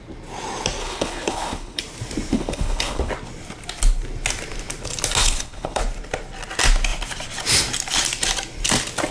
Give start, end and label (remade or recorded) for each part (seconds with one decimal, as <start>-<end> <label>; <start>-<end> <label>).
0.0-0.8 recorded; 0.8-1.8 remade; 1.8-2.3 recorded; 2.3-3.1 remade; 3.1-5.2 recorded; 5.2-5.8 remade; 5.8-9.1 recorded